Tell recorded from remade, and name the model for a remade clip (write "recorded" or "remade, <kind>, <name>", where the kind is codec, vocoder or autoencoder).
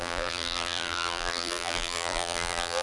remade, vocoder, BigVGAN v2